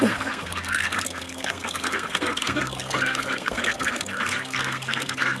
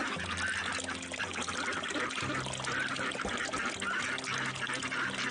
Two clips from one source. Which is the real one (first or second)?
second